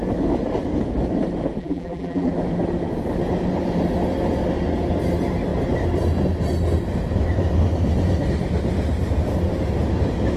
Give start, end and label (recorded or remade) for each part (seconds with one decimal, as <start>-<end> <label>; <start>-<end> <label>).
0.0-1.6 recorded; 1.6-2.3 remade; 2.3-10.4 recorded